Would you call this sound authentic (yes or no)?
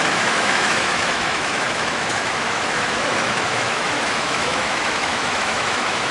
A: no